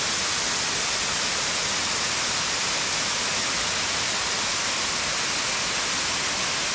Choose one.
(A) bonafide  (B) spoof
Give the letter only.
A